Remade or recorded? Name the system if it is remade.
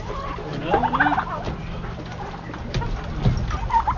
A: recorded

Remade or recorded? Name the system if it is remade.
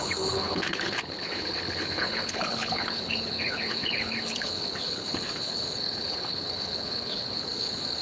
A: remade, codec, HILCodec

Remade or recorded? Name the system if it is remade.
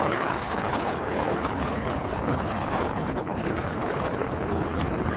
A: remade, codec, HILCodec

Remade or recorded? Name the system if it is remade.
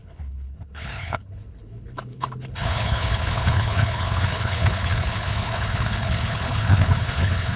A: remade, codec, HILCodec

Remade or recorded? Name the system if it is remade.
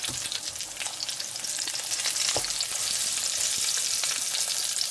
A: recorded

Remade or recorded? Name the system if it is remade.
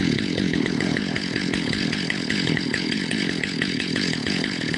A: remade, codec, HILCodec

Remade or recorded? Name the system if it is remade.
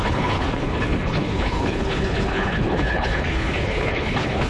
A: remade, codec, HILCodec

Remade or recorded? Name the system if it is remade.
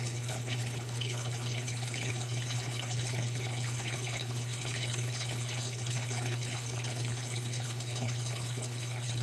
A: remade, codec, HILCodec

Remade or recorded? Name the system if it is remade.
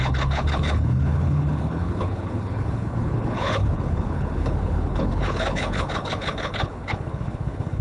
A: remade, codec, HILCodec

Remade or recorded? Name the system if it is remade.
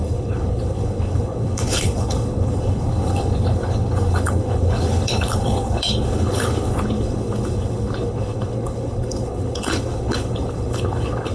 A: remade, codec, HILCodec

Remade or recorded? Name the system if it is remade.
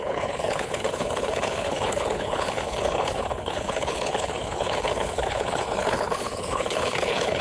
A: remade, codec, HILCodec